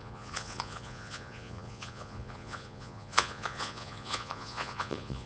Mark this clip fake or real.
fake